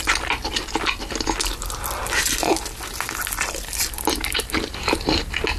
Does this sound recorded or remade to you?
recorded